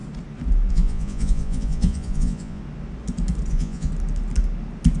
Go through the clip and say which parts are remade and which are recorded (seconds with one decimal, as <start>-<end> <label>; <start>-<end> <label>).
0.0-0.7 recorded; 0.7-2.6 remade; 2.6-3.5 recorded; 3.5-3.9 remade; 3.9-5.0 recorded